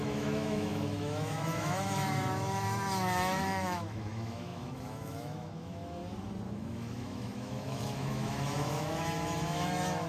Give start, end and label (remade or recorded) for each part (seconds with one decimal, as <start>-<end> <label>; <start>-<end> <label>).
0.0-6.0 remade; 6.0-6.5 recorded; 6.5-10.1 remade